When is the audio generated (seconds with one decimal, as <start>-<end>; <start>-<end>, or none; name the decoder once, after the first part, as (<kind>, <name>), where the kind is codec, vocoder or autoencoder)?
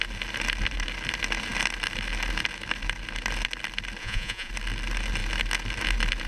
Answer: 4.0-4.5 (vocoder, Vocos)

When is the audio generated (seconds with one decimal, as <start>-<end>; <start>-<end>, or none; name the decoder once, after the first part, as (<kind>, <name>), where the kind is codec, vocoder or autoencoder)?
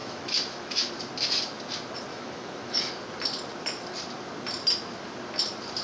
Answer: 0.0-0.9 (autoencoder, DAC-VAE); 2.1-2.9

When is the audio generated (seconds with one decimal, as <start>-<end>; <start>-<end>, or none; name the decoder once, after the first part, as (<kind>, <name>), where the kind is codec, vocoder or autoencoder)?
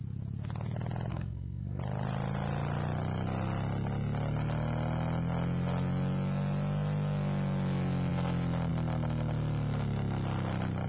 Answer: 1.1-1.8 (codec, SNAC)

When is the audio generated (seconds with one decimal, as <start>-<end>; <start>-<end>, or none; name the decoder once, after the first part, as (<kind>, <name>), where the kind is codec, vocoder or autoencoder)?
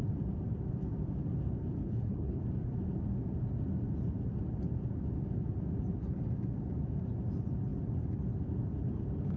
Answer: 1.8-2.4 (codec, HILCodec)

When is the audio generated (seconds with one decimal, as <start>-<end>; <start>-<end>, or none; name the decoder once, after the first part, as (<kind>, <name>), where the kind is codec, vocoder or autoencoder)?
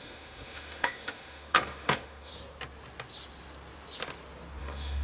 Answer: 0.0-2.3 (autoencoder, DAC-VAE); 4.6-5.0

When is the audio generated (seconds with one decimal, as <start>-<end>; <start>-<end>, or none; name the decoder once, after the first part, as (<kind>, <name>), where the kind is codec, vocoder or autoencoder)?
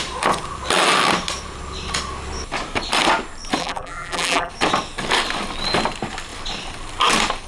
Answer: 3.6-4.5 (vocoder, BigVGAN v2)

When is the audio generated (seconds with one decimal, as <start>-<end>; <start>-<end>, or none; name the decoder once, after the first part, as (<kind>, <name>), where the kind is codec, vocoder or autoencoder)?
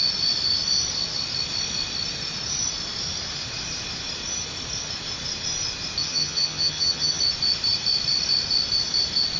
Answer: 6.0-7.2 (vocoder, HiFi-GAN)